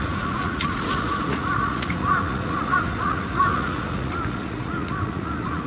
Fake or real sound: fake